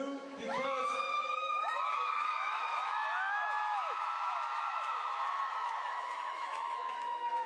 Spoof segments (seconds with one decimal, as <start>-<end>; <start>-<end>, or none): 0.0-7.5